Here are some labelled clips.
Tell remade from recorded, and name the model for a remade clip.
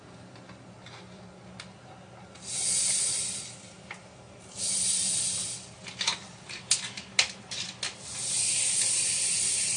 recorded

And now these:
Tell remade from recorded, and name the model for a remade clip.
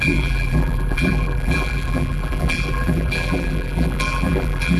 remade, vocoder, BigVGAN v2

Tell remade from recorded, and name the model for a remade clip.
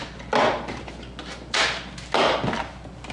recorded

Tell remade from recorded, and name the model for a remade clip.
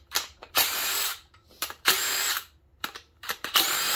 remade, vocoder, BigVGAN v2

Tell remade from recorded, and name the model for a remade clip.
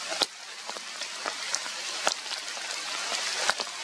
recorded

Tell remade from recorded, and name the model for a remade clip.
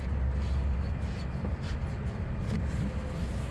recorded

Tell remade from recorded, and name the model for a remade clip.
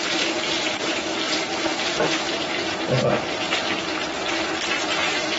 remade, vocoder, BigVGAN v2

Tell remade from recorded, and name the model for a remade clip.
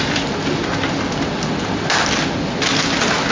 recorded